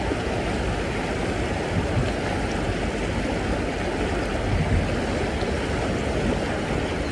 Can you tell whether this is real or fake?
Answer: real